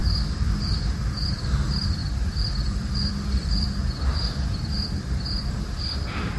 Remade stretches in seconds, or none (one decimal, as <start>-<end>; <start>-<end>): 2.0-5.5